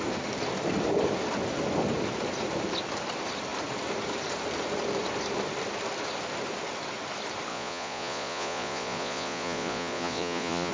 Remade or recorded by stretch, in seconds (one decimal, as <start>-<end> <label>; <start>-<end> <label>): 0.0-7.5 recorded; 7.5-10.7 remade